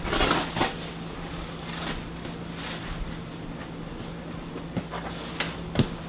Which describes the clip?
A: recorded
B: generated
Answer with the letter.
A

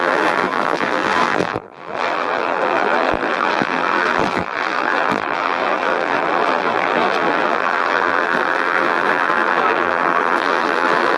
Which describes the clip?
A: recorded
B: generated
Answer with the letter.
B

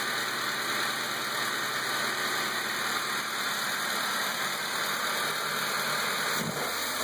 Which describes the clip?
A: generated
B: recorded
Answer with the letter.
B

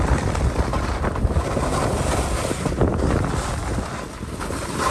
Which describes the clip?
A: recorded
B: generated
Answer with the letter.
A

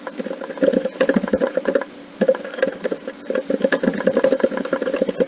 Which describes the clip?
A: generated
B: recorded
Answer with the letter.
A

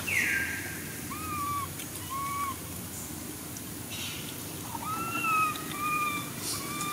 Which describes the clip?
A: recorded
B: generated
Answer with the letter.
A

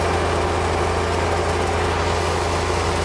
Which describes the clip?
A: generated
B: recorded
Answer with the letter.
B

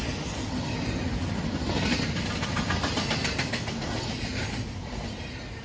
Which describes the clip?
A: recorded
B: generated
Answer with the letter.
A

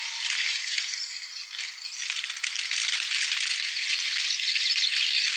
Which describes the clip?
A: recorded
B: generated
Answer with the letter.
B